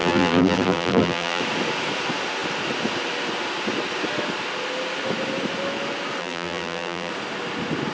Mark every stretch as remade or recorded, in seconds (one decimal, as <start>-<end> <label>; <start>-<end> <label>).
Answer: 0.0-1.4 remade; 1.4-6.2 recorded; 6.2-7.1 remade; 7.1-7.9 recorded